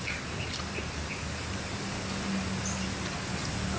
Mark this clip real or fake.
real